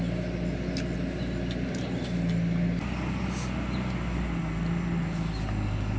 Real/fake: real